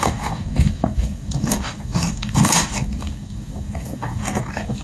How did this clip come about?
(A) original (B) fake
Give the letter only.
B